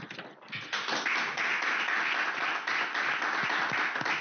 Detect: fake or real real